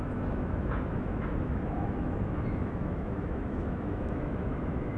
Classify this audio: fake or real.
fake